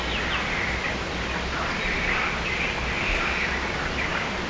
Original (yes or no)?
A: yes